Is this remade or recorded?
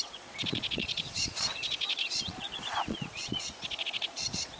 remade